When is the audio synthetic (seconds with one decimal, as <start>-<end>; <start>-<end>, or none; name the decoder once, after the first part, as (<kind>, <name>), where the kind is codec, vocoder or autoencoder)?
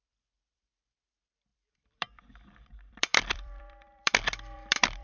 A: 0.0-5.0 (vocoder, BigVGAN v2)